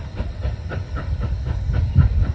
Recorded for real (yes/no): no